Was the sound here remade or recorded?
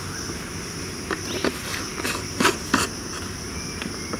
recorded